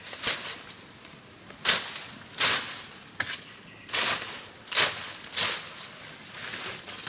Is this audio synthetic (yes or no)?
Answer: no